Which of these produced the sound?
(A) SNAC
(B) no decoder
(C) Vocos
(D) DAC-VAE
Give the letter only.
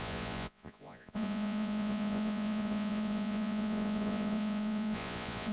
C